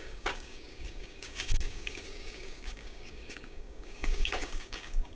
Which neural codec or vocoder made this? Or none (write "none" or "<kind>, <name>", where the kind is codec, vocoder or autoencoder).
codec, DAC